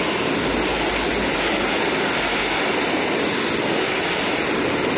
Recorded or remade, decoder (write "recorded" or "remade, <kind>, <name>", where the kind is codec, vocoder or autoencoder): recorded